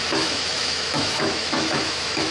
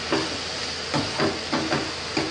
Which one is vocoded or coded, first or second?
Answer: first